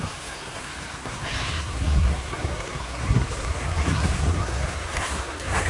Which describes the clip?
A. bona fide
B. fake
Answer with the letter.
B